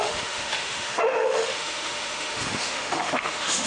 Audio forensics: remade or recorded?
remade